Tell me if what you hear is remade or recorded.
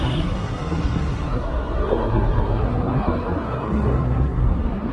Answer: remade